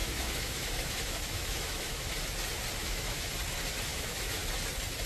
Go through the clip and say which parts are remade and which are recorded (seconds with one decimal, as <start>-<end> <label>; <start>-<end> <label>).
0.0-2.1 remade; 2.1-2.8 recorded; 2.8-3.3 remade; 3.3-3.9 recorded; 3.9-4.4 remade; 4.4-5.1 recorded